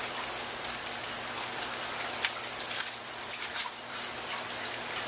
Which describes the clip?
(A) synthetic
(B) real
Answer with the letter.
B